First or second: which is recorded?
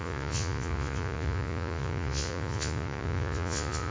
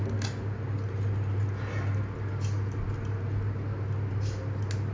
second